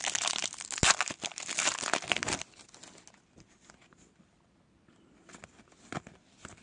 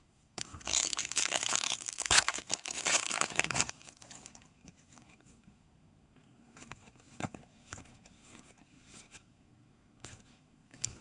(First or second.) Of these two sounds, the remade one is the second